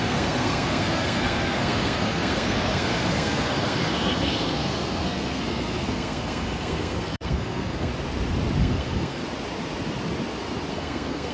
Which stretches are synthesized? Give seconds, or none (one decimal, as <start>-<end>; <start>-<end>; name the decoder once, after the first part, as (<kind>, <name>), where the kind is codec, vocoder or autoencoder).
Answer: 0.0-7.9 (codec, SNAC); 8.6-9.2; 10.7-11.3